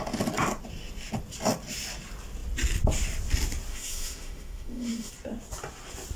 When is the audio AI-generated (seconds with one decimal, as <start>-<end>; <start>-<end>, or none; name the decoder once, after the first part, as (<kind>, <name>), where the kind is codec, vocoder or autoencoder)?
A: 3.7-5.1 (autoencoder, DAC-VAE)

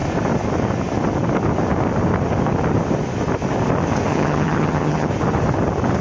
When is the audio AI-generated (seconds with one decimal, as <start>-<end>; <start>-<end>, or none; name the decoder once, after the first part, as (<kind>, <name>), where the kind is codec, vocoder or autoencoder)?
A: 4.1-5.1 (vocoder, HiFi-GAN)

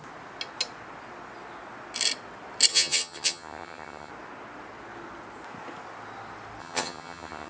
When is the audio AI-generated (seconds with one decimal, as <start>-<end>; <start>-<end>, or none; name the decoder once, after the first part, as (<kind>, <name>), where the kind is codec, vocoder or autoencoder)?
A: 2.7-4.1 (vocoder, HiFi-GAN); 6.6-7.5

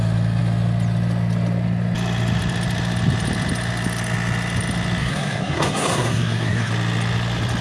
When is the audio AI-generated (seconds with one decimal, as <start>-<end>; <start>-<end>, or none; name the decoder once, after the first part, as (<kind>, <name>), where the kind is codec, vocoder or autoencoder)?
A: 5.0-6.7 (codec, SNAC)

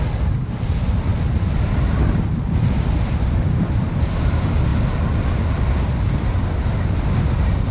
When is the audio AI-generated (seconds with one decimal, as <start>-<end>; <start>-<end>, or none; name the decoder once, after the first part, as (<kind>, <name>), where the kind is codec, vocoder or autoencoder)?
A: none

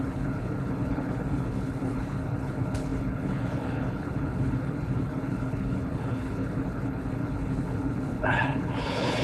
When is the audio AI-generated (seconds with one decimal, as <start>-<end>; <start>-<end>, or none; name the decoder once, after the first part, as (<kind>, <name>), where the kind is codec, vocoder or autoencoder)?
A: 0.0-9.2 (codec, HILCodec)